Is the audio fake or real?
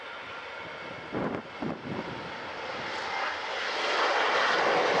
real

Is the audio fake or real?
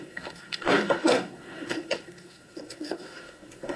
fake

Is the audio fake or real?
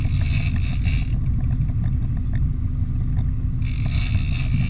real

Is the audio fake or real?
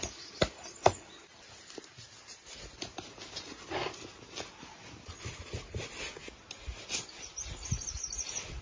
real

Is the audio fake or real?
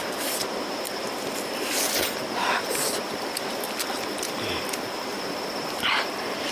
real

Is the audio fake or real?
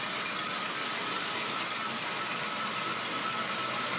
real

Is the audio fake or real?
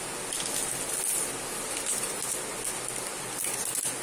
real